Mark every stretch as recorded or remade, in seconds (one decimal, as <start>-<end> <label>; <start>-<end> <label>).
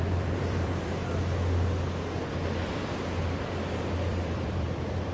0.0-1.0 remade; 1.0-4.1 recorded; 4.1-5.1 remade